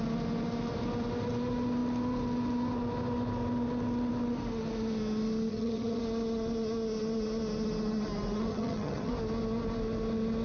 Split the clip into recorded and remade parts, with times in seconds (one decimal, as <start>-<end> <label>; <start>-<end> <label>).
0.0-5.5 recorded; 5.5-6.0 remade; 6.0-8.5 recorded; 8.5-9.1 remade; 9.1-10.4 recorded